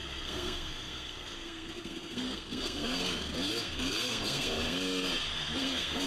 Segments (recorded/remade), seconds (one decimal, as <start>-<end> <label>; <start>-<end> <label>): 0.0-6.1 remade